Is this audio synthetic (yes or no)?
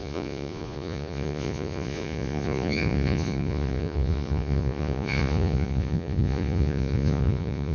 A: yes